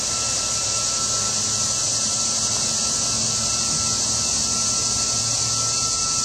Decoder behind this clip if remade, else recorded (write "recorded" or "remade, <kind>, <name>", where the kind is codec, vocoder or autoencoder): recorded